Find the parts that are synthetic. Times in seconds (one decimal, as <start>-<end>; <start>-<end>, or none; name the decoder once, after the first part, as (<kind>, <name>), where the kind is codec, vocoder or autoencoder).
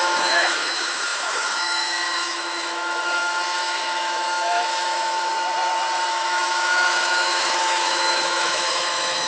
0.0-5.3 (autoencoder, DAC-VAE); 6.1-9.3